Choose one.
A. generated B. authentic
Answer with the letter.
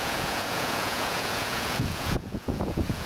A